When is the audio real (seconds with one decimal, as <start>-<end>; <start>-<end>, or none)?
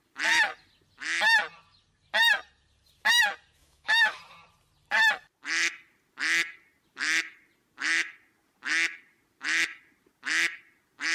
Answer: 0.0-3.6; 4.2-11.1